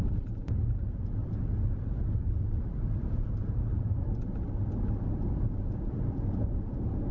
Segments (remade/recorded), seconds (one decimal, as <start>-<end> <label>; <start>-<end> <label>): 0.0-1.2 remade; 1.2-5.3 recorded; 5.3-7.1 remade